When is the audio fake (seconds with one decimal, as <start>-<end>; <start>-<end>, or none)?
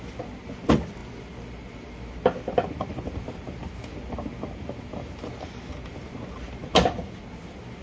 none